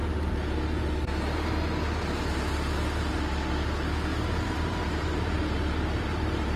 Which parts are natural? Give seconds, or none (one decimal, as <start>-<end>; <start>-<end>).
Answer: 0.0-4.1